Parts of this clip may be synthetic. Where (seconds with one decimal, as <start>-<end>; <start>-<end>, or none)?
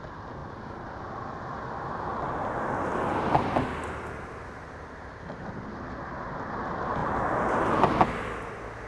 none